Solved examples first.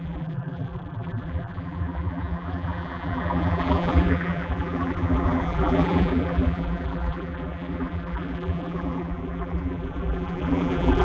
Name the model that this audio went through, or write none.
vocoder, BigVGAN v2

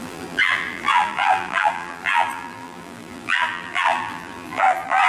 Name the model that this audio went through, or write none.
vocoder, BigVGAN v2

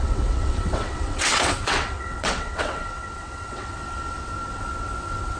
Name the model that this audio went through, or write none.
vocoder, WaveNeXt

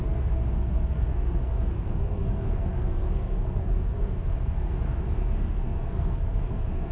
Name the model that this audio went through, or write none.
codec, SNAC